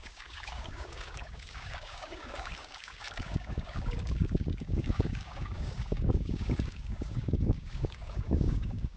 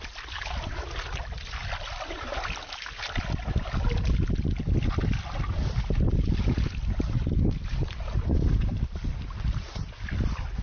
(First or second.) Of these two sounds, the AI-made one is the first